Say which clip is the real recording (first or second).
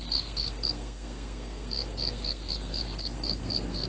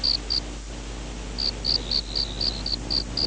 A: second